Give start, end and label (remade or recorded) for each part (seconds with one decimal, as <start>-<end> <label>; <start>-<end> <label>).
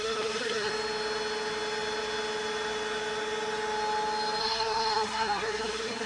0.0-0.7 remade; 0.7-4.4 recorded; 4.4-6.1 remade